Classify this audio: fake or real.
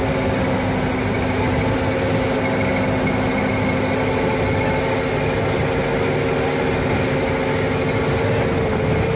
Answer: real